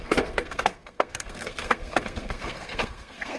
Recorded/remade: remade